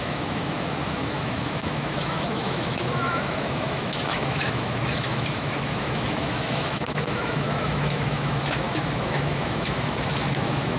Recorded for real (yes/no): no